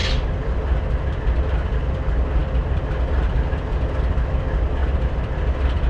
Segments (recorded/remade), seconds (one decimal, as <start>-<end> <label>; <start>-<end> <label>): 0.0-0.6 remade; 0.6-4.8 recorded; 4.8-5.9 remade